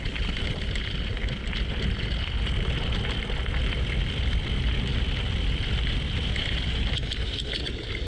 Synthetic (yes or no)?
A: no